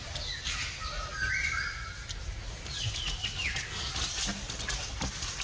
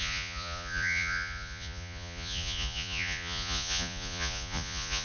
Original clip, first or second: first